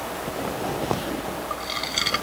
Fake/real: real